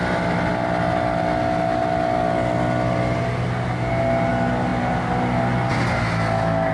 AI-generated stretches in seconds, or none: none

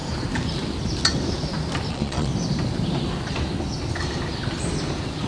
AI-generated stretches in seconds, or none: 1.9-2.3 (vocoder, Vocos)

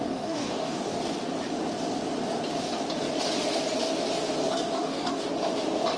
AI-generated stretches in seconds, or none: 0.0-0.9 (codec, DAC); 4.5-5.3

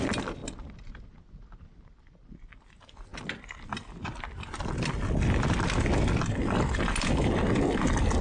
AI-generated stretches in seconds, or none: none